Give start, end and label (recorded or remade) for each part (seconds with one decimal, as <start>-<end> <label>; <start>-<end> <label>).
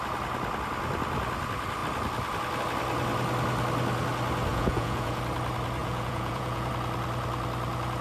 0.0-4.5 recorded; 4.5-5.2 remade; 5.2-5.8 recorded; 5.8-6.7 remade; 6.7-8.0 recorded